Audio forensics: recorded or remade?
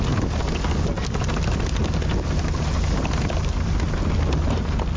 recorded